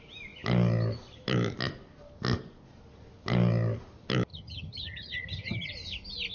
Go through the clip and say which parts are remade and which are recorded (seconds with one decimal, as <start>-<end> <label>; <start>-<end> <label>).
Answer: 0.0-4.3 recorded; 4.3-5.7 remade; 5.7-6.3 recorded